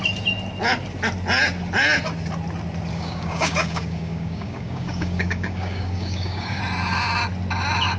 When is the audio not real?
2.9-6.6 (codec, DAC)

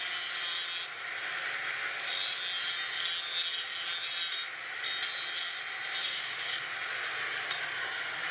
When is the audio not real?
6.0-6.7 (codec, DAC)

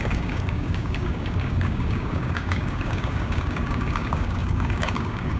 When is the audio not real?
0.0-5.4 (codec, DAC)